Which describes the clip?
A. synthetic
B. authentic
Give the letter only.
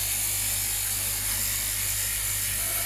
B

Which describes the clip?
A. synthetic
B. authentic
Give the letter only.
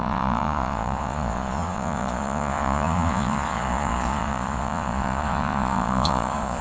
A